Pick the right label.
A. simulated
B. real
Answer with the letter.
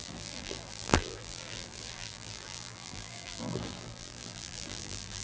A